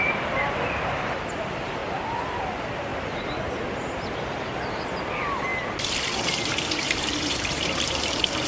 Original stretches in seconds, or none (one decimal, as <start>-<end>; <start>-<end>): 1.8-2.4; 2.9-4.3; 5.5-6.1